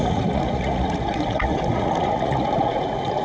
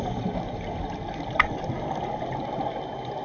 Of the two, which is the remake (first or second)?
first